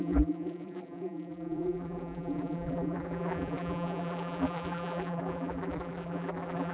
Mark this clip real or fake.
fake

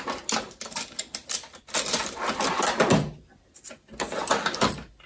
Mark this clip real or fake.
real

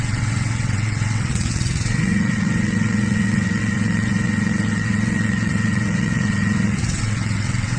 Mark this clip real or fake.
fake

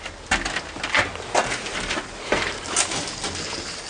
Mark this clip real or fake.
real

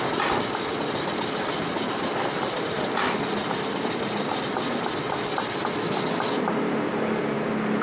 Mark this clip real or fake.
real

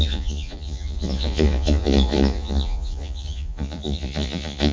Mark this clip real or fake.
fake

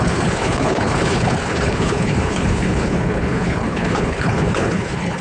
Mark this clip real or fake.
fake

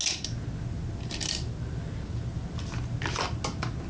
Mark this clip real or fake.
real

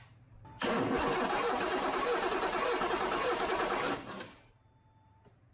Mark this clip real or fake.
fake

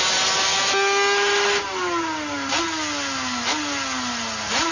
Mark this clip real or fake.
real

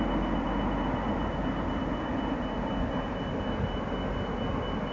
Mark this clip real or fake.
real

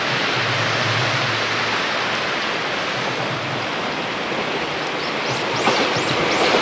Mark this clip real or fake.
real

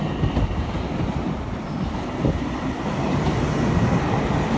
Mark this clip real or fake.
real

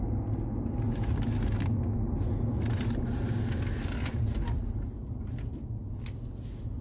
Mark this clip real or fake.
real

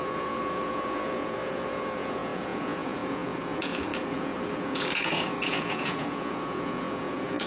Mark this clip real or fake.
fake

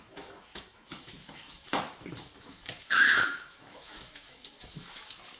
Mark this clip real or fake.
fake